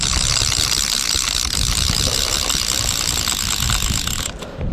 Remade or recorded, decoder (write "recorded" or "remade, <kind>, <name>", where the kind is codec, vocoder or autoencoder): recorded